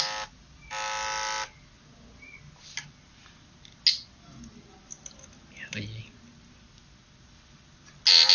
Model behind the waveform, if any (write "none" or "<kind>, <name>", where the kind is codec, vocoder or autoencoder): none